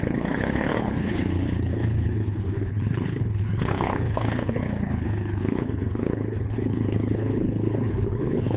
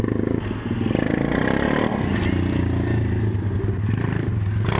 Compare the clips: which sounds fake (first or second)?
first